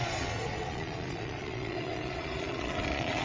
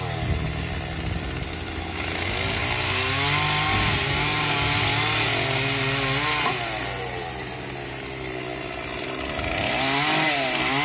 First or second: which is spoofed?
first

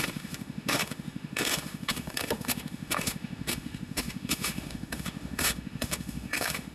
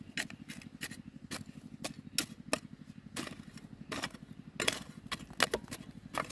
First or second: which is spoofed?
first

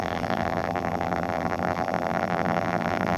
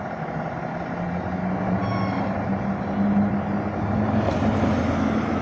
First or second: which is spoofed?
first